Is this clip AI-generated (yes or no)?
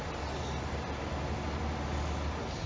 no